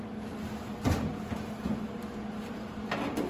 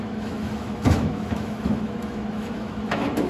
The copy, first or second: second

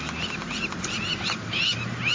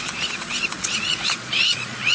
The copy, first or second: second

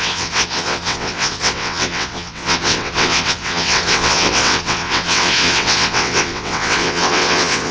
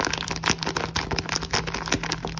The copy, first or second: first